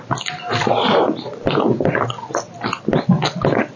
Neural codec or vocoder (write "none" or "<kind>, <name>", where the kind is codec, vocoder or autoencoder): none